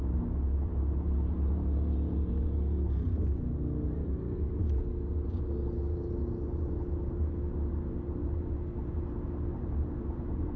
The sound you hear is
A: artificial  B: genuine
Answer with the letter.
B